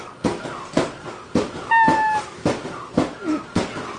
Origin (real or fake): real